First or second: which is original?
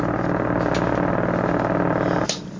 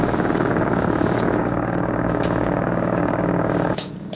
first